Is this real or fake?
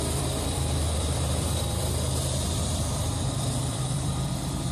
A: fake